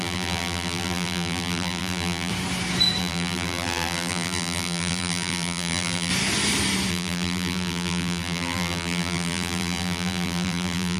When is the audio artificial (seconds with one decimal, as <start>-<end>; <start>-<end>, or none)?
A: 0.0-2.3; 3.0-6.1; 6.9-11.0